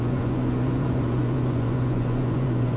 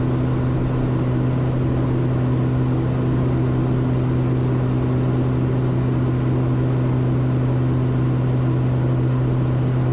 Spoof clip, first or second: first